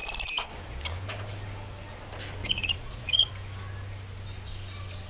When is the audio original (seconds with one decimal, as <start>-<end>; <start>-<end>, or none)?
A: 0.0-2.4; 3.3-5.1